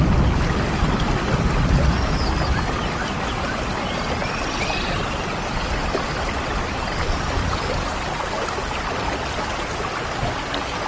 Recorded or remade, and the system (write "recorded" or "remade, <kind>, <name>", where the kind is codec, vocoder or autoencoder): recorded